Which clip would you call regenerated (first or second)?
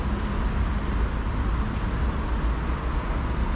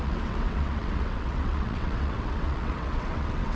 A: second